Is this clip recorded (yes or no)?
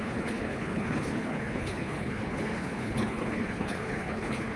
no